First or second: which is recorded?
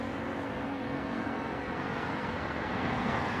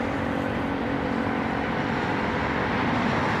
second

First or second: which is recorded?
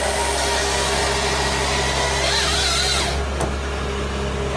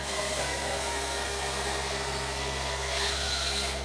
first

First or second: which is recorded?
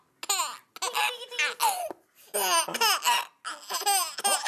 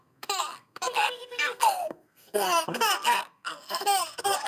first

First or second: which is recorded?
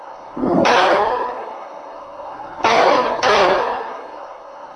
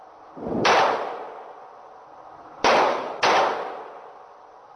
second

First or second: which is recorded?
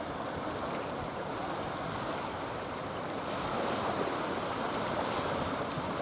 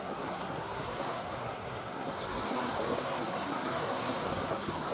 first